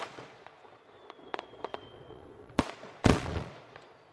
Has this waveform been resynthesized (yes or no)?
yes